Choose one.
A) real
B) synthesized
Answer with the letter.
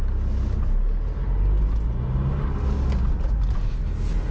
A